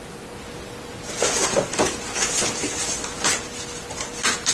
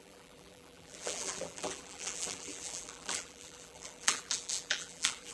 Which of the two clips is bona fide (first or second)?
first